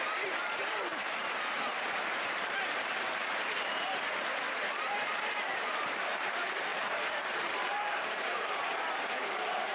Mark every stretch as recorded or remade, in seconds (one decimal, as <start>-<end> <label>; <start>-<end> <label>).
0.0-9.7 remade